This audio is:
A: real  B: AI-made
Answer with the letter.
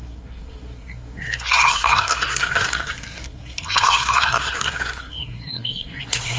B